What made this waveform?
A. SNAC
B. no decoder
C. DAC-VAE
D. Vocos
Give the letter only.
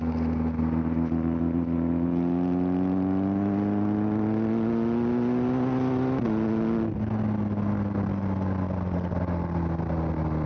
B